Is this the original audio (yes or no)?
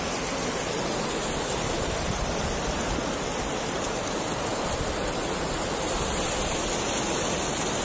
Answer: yes